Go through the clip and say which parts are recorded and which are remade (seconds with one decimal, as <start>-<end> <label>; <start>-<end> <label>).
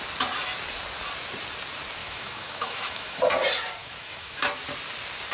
0.0-2.0 recorded; 2.0-3.2 remade; 3.2-3.8 recorded; 3.8-4.4 remade; 4.4-5.3 recorded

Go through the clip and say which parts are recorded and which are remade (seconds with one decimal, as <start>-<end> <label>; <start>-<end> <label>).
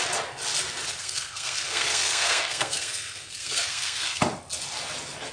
0.0-1.0 recorded; 1.0-4.2 remade; 4.2-5.3 recorded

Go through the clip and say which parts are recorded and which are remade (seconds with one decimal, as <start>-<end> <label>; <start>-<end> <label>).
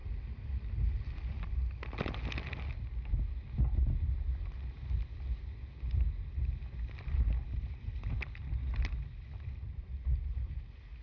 0.0-11.0 recorded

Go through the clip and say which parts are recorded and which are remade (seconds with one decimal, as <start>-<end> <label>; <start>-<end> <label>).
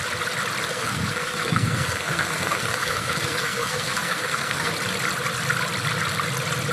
0.0-0.7 recorded; 0.7-4.7 remade; 4.7-6.7 recorded